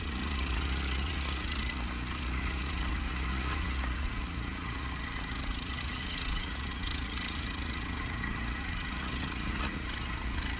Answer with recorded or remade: remade